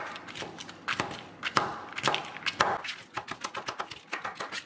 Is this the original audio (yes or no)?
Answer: yes